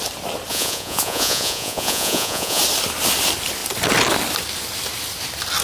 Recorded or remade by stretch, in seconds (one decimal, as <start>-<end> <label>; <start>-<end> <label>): 0.0-0.5 recorded; 0.5-2.6 remade; 2.6-5.6 recorded